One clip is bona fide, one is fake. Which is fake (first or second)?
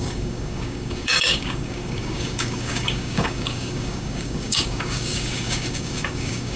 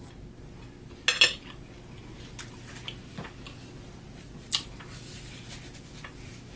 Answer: first